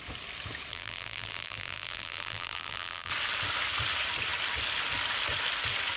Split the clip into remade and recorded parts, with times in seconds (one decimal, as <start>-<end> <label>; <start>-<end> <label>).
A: 0.0-0.7 recorded; 0.7-3.1 remade; 3.1-6.0 recorded

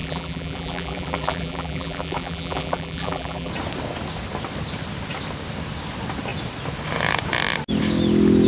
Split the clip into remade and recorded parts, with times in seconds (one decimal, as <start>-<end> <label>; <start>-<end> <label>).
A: 0.0-3.5 remade; 3.5-8.5 recorded

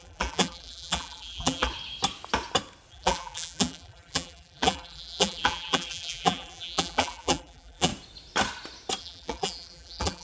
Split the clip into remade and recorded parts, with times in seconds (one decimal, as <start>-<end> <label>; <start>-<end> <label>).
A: 0.0-1.7 remade; 1.7-2.9 recorded; 2.9-7.9 remade; 7.9-9.0 recorded; 9.0-10.2 remade

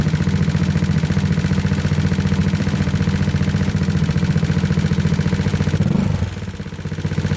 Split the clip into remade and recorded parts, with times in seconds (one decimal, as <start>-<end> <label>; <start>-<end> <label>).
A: 0.0-2.4 recorded; 2.4-4.3 remade; 4.3-7.4 recorded